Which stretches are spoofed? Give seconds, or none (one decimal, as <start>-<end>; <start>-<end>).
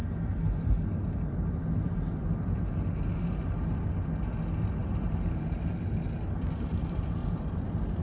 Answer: 4.8-5.7; 7.2-8.0